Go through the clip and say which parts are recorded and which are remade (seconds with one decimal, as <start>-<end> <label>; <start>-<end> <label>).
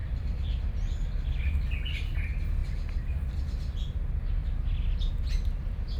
0.0-6.0 recorded